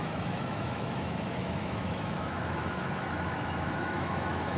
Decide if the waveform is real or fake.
fake